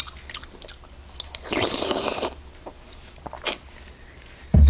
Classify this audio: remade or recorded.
recorded